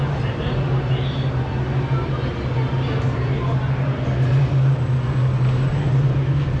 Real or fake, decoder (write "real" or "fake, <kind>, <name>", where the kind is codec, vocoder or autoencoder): real